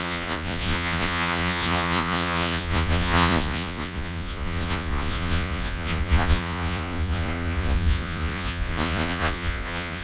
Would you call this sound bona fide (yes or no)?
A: no